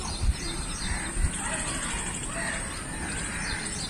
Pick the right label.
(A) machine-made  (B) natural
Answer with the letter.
A